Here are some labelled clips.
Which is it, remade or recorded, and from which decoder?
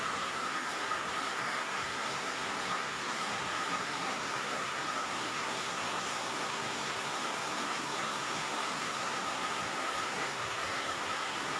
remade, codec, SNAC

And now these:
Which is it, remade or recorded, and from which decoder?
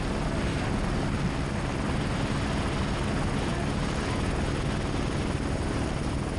recorded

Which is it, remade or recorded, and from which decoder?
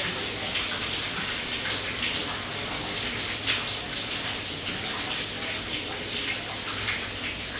recorded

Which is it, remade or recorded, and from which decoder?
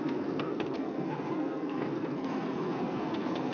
remade, codec, SNAC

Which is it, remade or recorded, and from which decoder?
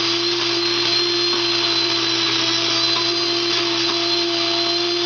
recorded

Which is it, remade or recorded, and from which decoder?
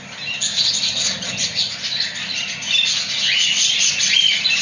recorded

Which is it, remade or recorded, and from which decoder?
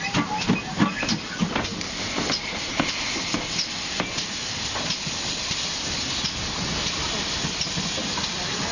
recorded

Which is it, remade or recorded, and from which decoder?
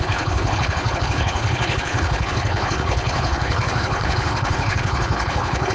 remade, codec, HILCodec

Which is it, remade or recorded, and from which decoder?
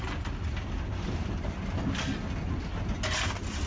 recorded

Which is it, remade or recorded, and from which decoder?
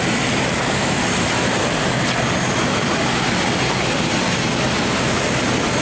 recorded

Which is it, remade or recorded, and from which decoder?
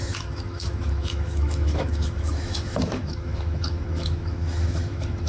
remade, autoencoder, DAC-VAE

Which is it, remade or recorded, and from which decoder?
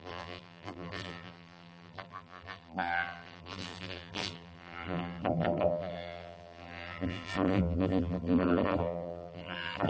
remade, vocoder, BigVGAN v2